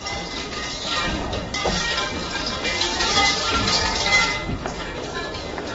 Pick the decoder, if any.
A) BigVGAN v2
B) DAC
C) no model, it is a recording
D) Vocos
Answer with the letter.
B